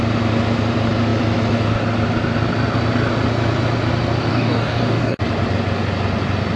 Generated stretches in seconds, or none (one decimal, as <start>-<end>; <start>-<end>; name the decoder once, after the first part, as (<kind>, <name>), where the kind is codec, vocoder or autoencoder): 4.3-5.2 (codec, DAC)